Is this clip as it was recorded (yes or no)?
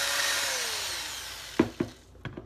yes